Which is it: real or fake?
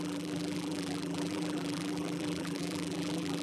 fake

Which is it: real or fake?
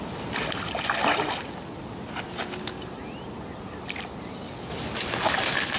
real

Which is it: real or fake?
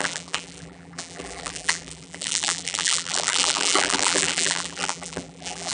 fake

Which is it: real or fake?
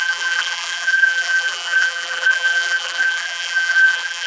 fake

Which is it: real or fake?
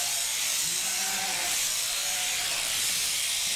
fake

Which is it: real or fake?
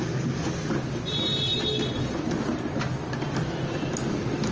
real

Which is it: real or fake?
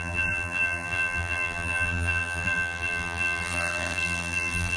fake